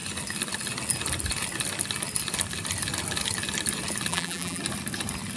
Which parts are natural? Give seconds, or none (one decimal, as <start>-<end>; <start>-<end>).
0.0-4.1; 4.6-5.4